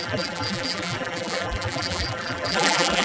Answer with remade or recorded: remade